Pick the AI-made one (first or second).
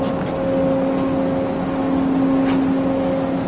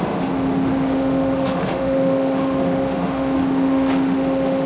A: second